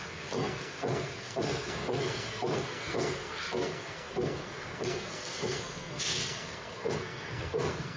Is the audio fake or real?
fake